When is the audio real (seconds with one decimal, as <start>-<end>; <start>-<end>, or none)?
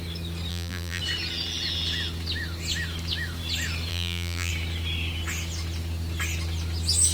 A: 0.0-0.5; 1.0-3.9; 4.5-7.1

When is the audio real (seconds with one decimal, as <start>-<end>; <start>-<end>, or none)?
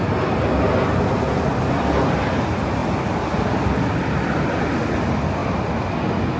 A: 0.0-2.8; 4.4-6.4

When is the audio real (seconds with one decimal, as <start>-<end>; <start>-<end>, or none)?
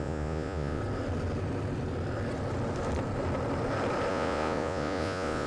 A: 0.8-4.1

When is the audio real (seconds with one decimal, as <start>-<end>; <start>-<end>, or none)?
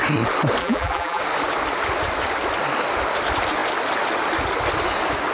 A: 0.0-0.6; 1.2-5.3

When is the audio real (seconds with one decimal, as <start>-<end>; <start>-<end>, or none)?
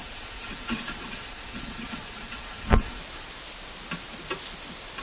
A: 3.0-5.0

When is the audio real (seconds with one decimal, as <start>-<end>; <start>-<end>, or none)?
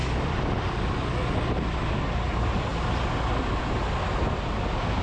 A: 0.0-1.8; 2.7-5.0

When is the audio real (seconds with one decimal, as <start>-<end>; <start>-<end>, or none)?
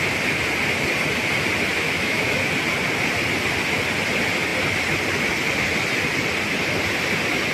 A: 0.0-1.7; 2.5-7.5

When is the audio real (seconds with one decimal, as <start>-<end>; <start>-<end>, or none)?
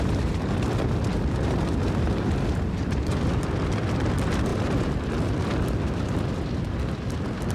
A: 0.0-7.5